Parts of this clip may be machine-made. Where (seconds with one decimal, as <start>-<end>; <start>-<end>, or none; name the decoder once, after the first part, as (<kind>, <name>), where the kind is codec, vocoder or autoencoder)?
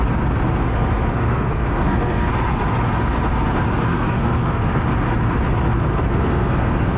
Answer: 0.6-2.3 (codec, SNAC); 3.9-4.8; 5.9-7.0